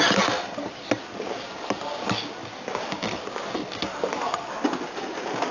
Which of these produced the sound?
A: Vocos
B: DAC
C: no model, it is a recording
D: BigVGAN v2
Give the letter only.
C